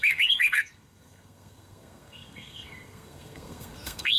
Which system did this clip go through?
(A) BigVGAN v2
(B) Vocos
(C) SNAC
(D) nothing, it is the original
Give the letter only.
C